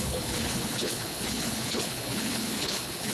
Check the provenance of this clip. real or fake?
fake